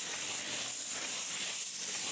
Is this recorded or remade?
remade